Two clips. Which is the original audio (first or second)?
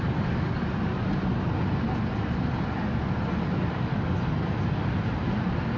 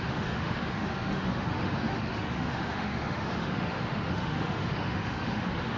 first